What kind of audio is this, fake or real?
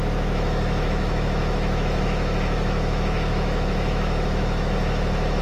fake